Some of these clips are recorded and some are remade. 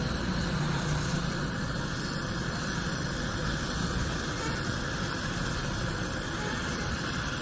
remade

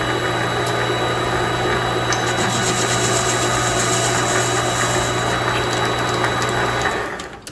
recorded